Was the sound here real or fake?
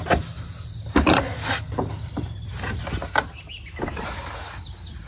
real